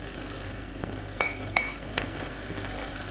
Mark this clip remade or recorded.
remade